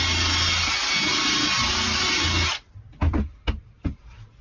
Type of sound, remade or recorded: recorded